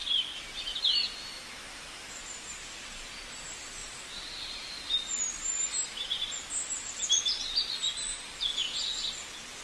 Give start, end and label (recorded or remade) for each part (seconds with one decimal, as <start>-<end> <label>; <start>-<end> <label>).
0.0-1.3 recorded; 1.3-2.2 remade; 2.2-9.6 recorded

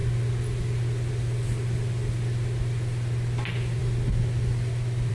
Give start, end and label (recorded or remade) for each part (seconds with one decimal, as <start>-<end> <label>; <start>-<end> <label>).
0.0-5.1 recorded